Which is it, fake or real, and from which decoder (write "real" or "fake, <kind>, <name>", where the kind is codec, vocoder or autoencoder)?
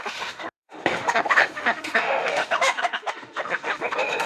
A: fake, autoencoder, DAC-VAE